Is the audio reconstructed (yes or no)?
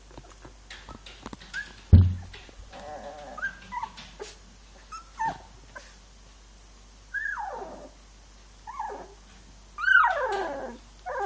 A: no